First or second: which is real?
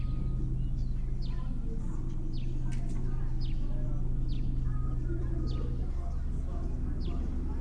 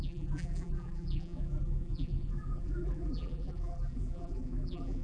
first